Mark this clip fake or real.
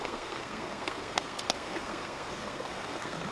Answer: fake